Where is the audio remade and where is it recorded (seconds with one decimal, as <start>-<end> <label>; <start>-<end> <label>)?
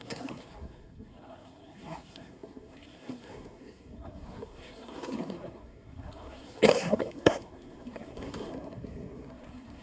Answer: 0.0-9.8 remade